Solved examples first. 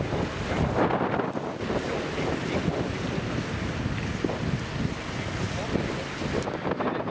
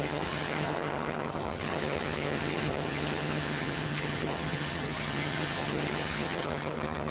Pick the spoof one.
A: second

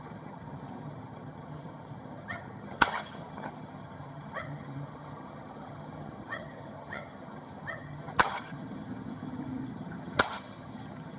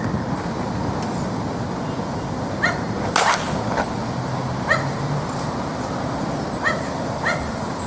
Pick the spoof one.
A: first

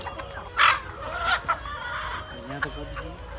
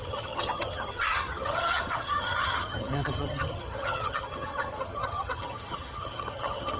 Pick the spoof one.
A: second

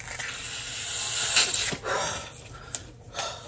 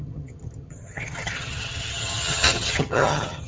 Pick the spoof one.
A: second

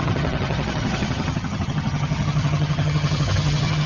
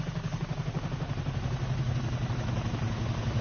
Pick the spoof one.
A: first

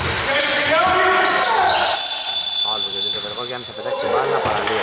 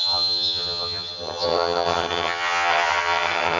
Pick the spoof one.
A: second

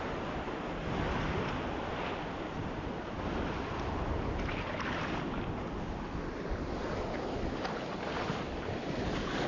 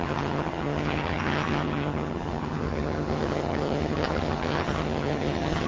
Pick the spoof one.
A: second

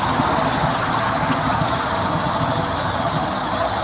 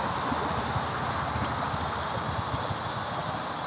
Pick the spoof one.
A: first